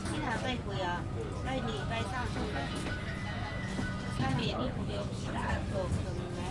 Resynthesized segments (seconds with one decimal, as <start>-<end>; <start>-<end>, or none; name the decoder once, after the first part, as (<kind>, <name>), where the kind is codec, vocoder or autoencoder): 4.4-5.5 (codec, HILCodec)